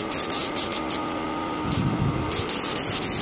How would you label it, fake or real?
real